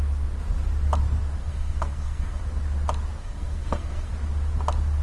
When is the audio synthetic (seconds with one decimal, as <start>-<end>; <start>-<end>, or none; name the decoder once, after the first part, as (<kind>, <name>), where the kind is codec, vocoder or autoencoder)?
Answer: 1.4-2.4 (codec, SNAC); 3.2-4.1